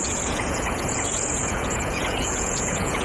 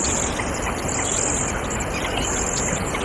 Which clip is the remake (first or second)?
first